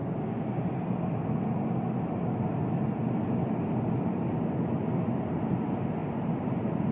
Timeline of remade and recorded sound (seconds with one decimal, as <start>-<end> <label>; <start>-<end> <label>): 0.0-6.9 recorded